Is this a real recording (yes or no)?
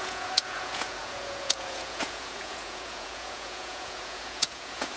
no